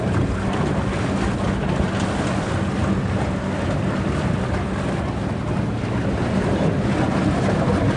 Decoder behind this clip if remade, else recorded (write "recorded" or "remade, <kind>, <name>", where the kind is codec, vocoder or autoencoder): recorded